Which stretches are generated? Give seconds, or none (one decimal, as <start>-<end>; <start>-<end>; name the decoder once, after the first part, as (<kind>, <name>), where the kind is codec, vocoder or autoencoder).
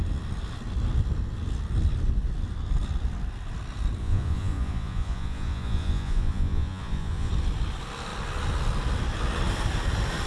4.0-7.3 (vocoder, Vocos)